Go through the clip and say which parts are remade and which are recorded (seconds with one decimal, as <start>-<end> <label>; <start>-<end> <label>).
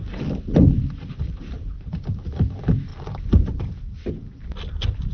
0.0-5.1 recorded